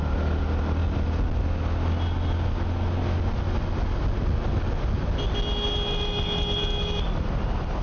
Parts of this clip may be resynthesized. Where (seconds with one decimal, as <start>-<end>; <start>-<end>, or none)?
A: none